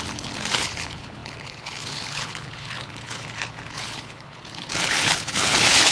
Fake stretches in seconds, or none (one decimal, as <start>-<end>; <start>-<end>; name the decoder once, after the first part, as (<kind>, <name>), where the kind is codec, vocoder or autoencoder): 0.0-5.9 (codec, HILCodec)

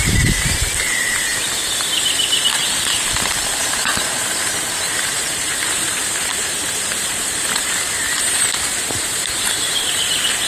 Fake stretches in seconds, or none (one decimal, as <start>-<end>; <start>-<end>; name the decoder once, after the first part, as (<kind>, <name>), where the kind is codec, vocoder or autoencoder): 0.0-1.3 (vocoder, BigVGAN v2); 2.4-10.5

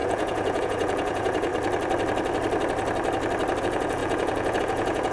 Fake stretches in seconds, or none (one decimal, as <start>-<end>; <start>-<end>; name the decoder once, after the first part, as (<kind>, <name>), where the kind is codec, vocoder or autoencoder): 0.0-1.5 (vocoder, Vocos); 3.6-5.1

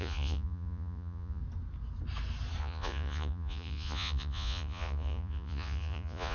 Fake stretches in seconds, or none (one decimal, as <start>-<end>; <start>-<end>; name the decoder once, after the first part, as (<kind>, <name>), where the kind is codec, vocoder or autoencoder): 0.0-1.4 (vocoder, Vocos); 2.6-6.3

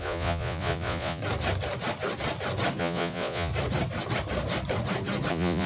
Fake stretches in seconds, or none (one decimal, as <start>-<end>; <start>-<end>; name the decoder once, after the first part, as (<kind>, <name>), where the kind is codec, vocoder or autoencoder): 0.0-1.2 (vocoder, Vocos); 2.8-3.5; 5.3-5.7